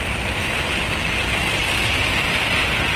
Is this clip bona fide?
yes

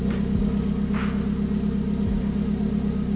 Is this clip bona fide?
yes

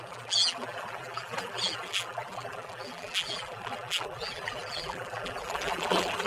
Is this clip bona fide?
no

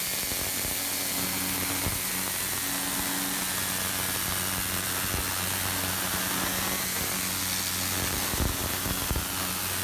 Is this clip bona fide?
yes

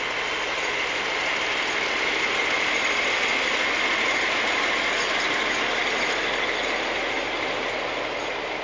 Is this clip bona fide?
yes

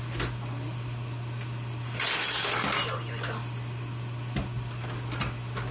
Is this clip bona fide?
yes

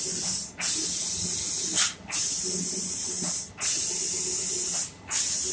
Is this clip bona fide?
yes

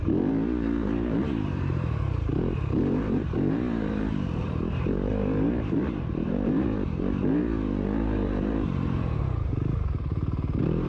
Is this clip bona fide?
no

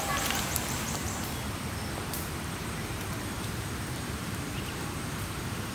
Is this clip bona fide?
no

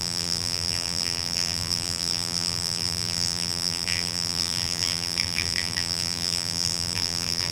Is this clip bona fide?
no